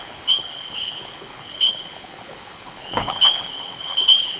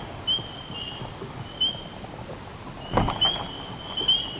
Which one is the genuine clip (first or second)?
second